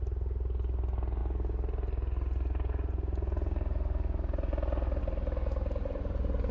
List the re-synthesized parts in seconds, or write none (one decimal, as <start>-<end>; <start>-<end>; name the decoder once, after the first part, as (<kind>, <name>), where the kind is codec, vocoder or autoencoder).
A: none